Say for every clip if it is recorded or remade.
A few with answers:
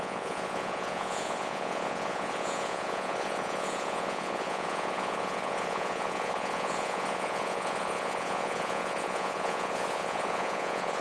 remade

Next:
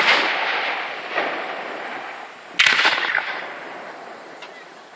recorded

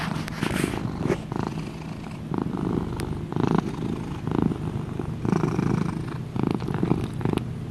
recorded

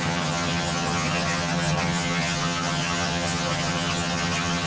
remade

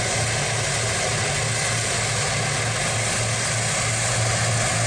recorded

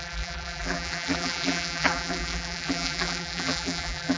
remade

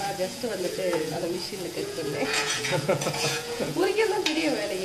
remade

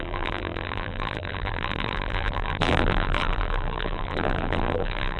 remade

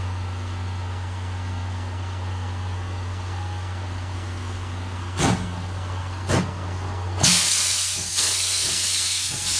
remade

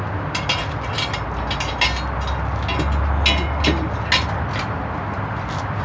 recorded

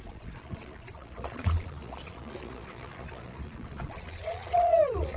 remade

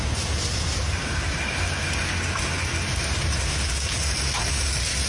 recorded